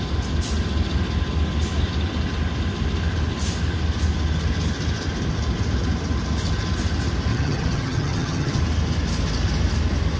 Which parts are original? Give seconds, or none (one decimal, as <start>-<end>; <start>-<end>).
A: 0.0-7.3; 8.6-10.2